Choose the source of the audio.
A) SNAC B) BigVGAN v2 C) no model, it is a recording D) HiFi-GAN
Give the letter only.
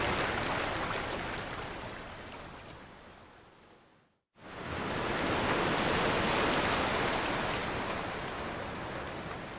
C